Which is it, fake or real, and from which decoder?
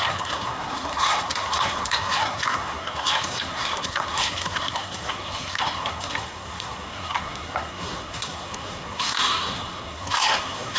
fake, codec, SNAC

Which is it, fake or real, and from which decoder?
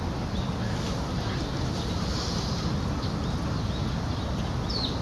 real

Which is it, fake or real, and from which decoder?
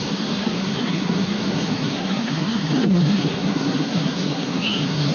fake, codec, SNAC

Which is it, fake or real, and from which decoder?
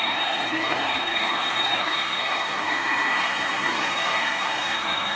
fake, codec, SNAC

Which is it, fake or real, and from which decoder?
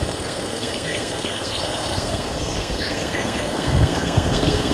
fake, codec, SNAC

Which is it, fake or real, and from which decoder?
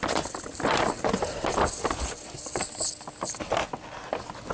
real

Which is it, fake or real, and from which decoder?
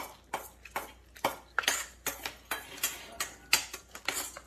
real